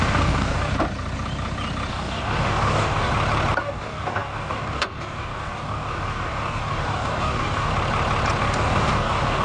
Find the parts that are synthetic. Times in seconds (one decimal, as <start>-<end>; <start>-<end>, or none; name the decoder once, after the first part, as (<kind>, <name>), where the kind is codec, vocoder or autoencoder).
0.0-0.7 (codec, DAC); 1.9-3.1; 3.6-7.7; 8.4-9.4